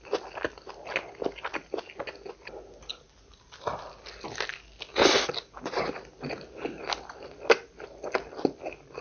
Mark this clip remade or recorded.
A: recorded